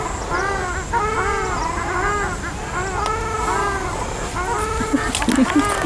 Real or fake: real